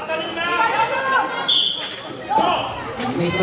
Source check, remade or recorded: recorded